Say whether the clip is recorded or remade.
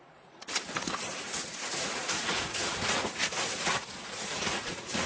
remade